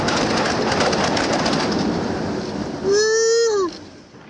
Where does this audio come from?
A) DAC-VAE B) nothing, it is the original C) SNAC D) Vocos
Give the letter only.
B